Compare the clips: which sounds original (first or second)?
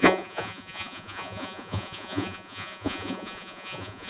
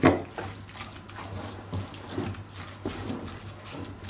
second